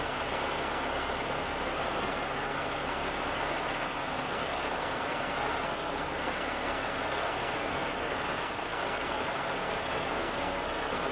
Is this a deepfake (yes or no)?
yes